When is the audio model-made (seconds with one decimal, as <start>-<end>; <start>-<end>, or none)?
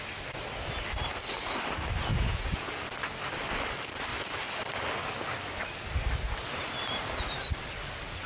2.1-2.8